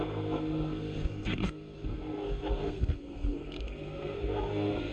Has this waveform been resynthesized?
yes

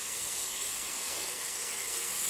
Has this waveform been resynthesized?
yes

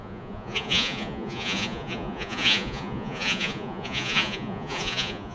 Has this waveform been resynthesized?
yes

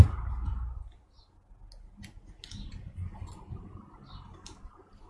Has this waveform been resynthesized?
no